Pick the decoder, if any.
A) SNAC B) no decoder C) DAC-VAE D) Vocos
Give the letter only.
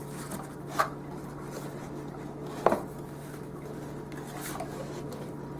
B